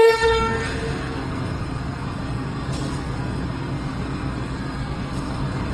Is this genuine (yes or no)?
no